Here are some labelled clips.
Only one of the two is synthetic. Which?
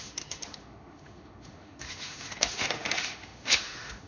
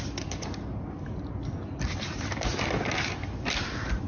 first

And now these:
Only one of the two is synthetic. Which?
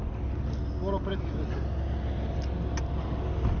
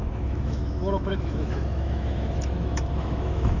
second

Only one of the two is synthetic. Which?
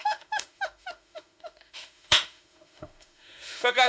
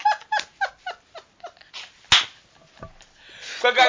first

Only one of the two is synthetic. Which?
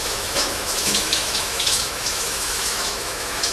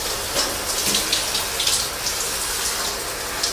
first